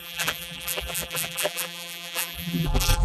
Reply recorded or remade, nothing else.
remade